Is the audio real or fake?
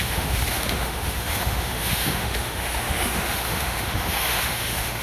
fake